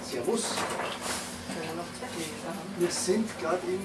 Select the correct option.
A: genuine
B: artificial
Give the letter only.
A